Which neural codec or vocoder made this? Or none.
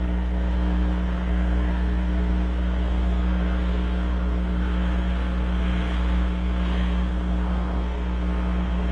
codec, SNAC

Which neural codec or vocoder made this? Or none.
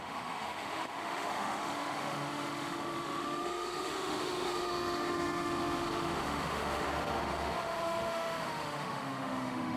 autoencoder, DAC-VAE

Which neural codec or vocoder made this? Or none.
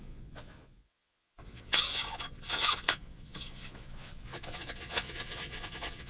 vocoder, Vocos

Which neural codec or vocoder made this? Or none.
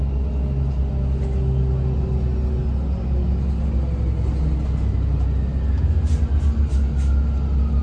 none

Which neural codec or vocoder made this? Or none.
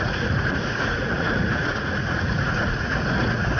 vocoder, Vocos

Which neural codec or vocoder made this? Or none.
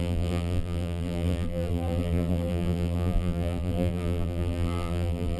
vocoder, BigVGAN v2